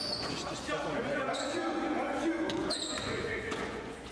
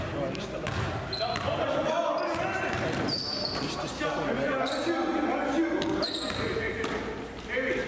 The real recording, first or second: second